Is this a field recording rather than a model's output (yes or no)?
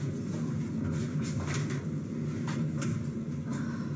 yes